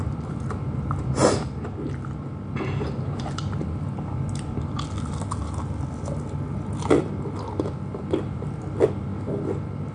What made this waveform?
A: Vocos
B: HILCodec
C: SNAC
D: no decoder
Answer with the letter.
D